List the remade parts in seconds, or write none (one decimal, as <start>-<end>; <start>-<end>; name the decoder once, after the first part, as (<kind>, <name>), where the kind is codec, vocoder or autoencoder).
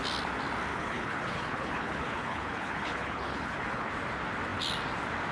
0.7-3.9 (codec, HILCodec)